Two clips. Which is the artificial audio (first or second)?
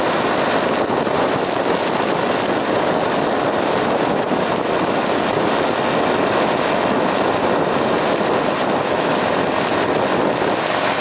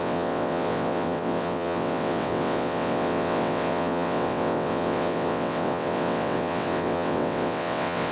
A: second